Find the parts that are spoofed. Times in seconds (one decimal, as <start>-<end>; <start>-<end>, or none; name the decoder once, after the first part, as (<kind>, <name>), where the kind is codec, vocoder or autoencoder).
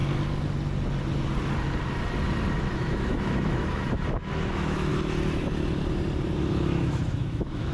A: 2.5-4.9 (autoencoder, DAC-VAE); 6.4-7.7